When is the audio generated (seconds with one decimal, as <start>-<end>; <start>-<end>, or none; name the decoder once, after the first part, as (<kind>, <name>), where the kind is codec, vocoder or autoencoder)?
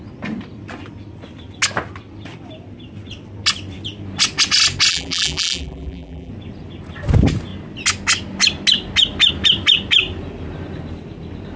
4.9-6.3 (vocoder, BigVGAN v2)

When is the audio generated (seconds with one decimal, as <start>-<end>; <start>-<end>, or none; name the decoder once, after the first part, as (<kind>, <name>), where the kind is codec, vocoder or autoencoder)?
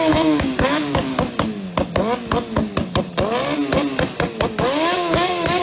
0.0-1.1 (codec, DAC); 4.5-5.6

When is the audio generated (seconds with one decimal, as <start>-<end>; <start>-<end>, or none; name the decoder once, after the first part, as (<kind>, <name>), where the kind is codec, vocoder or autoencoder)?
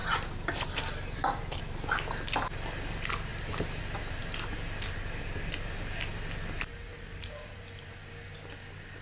0.0-1.6 (vocoder, BigVGAN v2); 3.3-3.8; 6.9-7.5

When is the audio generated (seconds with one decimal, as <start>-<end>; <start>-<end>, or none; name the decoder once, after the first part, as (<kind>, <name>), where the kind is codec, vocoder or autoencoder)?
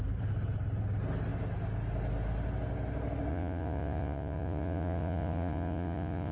3.3-6.3 (vocoder, Vocos)